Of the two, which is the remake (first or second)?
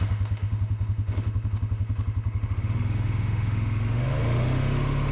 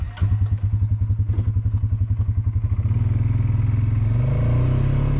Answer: first